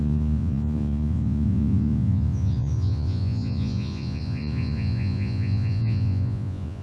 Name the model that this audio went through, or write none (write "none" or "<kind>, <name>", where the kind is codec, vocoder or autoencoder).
vocoder, Vocos